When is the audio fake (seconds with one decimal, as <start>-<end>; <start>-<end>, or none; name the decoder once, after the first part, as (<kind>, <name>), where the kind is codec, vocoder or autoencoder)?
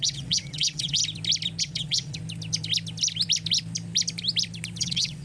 0.0-1.0 (vocoder, WaveNeXt); 1.6-2.2; 4.8-5.2